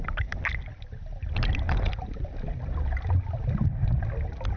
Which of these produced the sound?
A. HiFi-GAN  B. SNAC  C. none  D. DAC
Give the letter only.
C